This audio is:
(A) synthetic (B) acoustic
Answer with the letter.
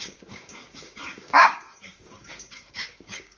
A